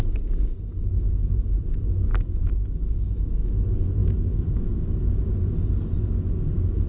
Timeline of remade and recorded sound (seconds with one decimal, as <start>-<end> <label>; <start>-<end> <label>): 0.0-2.1 recorded; 2.1-3.1 remade; 3.1-4.0 recorded; 4.0-5.0 remade; 5.0-6.9 recorded